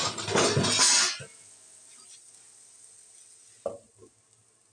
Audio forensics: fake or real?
real